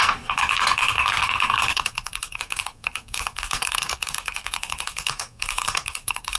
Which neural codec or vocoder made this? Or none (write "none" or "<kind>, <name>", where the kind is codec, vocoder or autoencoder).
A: codec, SNAC